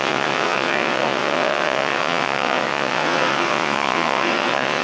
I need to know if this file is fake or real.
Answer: fake